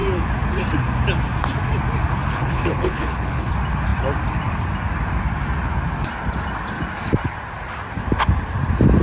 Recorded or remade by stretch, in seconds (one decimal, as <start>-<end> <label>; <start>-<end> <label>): 0.0-2.3 recorded; 2.3-3.5 remade; 3.5-9.0 recorded